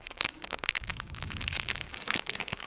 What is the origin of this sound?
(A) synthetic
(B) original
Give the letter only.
A